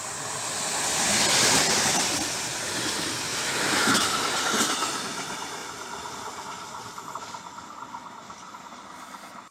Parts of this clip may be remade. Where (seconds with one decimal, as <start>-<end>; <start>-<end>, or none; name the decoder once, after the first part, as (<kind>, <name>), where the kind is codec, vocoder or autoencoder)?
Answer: 3.3-4.1 (autoencoder, DAC-VAE)